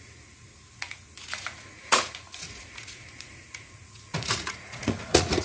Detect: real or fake fake